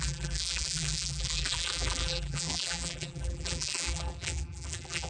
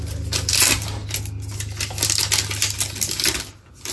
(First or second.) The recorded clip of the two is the second